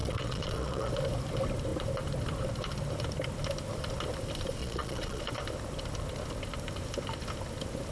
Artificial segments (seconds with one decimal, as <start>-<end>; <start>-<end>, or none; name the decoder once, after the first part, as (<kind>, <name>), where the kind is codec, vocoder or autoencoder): 0.0-0.9 (vocoder, Vocos); 4.6-5.2